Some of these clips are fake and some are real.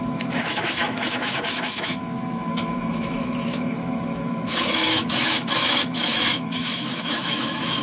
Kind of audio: fake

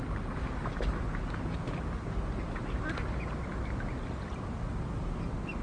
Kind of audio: real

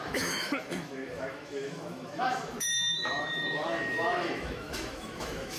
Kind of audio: fake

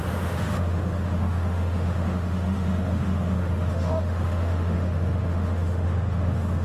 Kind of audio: fake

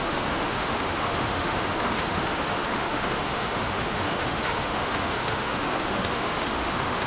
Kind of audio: fake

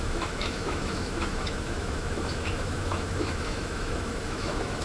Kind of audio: fake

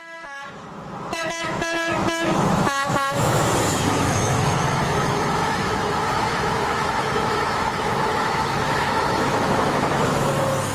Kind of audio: fake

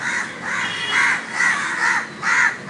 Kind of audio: real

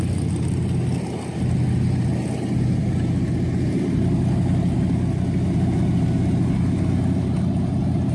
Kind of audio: real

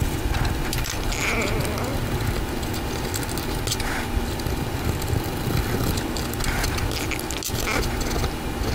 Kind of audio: real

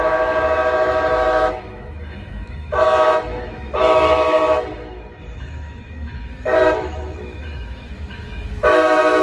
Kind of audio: fake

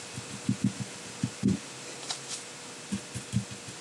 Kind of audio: real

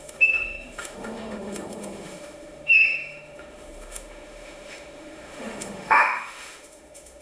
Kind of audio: fake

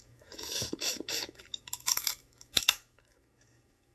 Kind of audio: fake